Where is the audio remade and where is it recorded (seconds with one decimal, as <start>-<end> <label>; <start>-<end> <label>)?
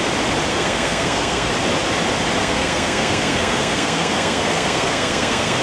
0.0-0.5 recorded; 0.5-1.5 remade; 1.5-2.4 recorded; 2.4-5.6 remade